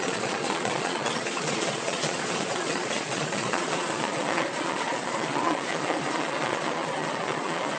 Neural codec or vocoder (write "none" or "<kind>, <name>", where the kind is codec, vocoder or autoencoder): vocoder, Vocos